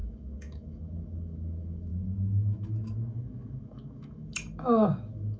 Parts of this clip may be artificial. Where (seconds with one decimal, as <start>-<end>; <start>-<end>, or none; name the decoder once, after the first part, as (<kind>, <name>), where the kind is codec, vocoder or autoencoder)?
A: 0.0-5.4 (autoencoder, DAC-VAE)